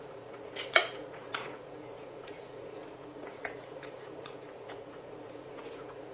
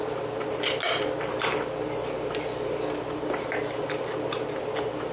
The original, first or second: second